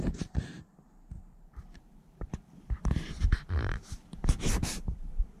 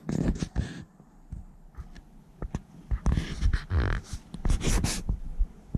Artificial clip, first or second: first